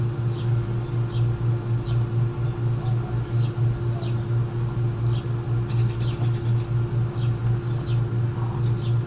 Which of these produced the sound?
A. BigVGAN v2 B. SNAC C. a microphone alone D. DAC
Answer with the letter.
C